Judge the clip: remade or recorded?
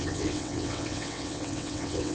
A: remade